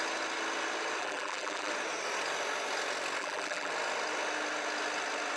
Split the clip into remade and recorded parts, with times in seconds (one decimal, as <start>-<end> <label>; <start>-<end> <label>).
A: 0.0-1.0 recorded; 1.0-1.7 remade; 1.7-3.2 recorded; 3.2-3.7 remade; 3.7-5.4 recorded